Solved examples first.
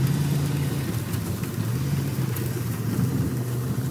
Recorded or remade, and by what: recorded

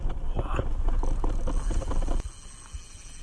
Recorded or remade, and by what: recorded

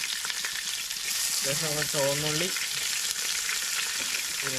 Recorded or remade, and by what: recorded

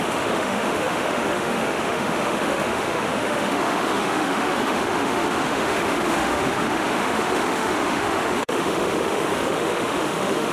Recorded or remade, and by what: remade, autoencoder, DAC-VAE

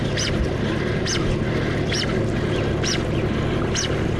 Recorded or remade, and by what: remade, vocoder, BigVGAN v2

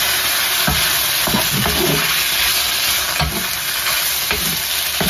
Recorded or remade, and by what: recorded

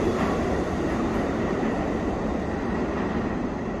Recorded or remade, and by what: remade, vocoder, BigVGAN v2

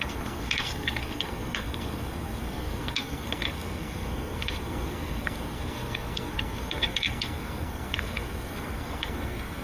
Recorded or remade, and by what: remade, codec, SNAC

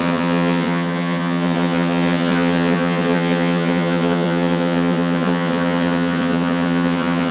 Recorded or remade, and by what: remade, vocoder, HiFi-GAN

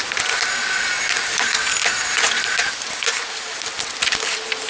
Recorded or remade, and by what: recorded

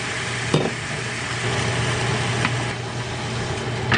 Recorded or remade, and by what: recorded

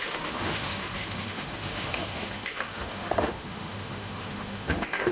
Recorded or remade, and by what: remade, autoencoder, DAC-VAE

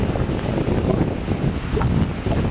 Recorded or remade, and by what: recorded